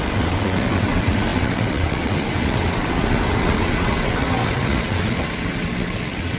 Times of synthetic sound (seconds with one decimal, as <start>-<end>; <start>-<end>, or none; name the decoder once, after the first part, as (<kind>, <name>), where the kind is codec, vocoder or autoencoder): 0.0-6.4 (vocoder, WaveNeXt)